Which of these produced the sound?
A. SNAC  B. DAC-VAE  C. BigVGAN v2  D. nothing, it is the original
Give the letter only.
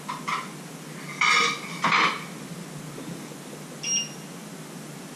D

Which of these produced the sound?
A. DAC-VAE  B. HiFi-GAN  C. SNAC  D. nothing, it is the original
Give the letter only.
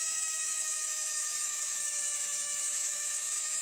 A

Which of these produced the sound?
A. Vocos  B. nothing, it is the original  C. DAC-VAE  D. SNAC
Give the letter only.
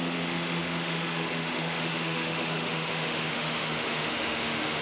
C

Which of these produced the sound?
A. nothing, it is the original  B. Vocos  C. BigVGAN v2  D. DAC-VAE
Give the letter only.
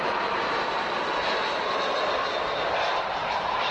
A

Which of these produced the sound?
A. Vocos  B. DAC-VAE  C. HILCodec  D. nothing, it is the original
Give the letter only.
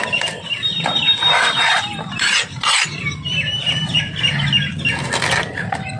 D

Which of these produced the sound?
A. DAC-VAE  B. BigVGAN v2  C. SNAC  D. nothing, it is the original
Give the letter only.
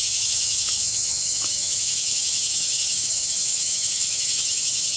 A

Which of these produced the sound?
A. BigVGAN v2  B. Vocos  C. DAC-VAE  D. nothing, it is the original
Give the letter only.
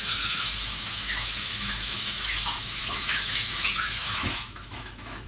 C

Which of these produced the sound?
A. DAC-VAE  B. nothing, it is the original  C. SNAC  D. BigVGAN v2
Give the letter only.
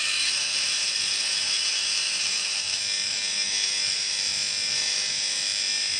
A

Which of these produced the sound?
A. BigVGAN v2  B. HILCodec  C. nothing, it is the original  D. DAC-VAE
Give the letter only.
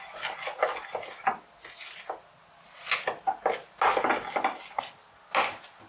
C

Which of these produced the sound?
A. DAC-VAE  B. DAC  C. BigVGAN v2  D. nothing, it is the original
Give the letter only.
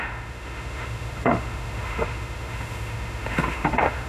A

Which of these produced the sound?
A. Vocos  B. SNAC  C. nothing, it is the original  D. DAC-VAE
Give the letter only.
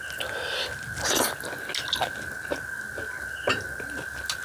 C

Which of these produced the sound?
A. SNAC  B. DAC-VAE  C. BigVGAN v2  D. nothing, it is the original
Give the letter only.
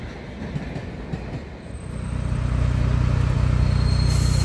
D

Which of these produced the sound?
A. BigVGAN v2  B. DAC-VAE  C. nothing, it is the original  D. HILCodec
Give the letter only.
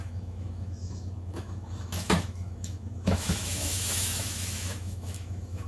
B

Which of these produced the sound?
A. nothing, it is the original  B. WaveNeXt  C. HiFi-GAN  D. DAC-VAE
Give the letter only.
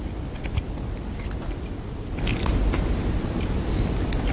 A